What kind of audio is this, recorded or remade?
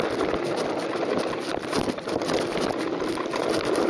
recorded